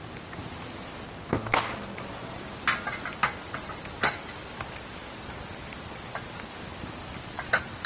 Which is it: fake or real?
real